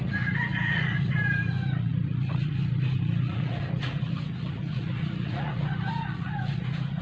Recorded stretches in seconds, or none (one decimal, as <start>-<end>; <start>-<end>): none